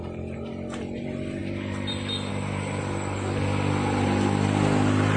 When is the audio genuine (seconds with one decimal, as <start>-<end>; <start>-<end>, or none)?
0.0-5.2